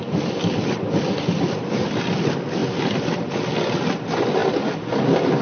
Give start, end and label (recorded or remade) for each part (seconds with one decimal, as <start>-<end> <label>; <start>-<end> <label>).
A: 0.0-5.4 remade